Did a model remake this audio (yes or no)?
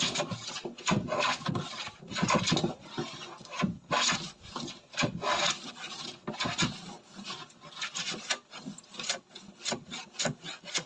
no